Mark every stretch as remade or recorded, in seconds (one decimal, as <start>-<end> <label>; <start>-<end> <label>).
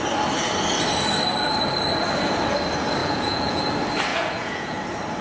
0.0-3.0 recorded; 3.0-3.6 remade; 3.6-4.1 recorded; 4.1-4.8 remade; 4.8-5.2 recorded